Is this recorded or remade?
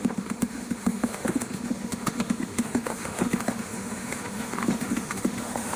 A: remade